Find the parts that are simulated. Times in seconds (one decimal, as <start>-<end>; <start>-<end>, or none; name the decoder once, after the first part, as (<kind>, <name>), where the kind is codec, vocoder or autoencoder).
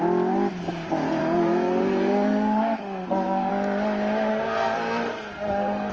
1.2-3.5 (codec, SNAC); 4.3-5.9